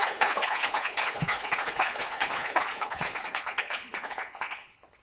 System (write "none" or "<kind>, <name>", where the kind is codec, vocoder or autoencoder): codec, HILCodec